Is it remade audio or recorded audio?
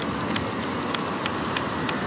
recorded